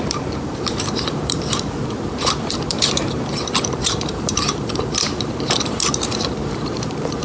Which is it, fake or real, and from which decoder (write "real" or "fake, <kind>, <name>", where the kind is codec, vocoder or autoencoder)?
fake, vocoder, BigVGAN v2